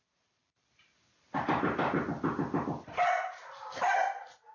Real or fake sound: fake